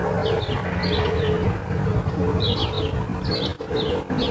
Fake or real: real